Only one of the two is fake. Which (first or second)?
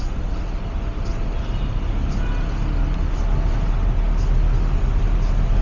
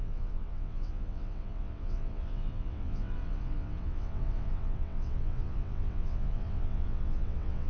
second